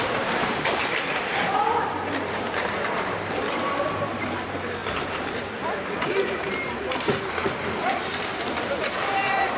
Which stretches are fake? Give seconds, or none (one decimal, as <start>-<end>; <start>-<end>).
0.0-9.6